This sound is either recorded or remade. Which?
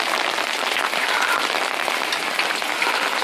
recorded